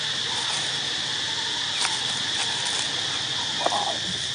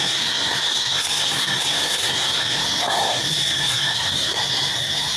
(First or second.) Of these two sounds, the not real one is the second